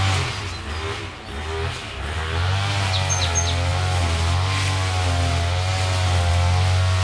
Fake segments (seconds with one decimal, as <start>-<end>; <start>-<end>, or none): none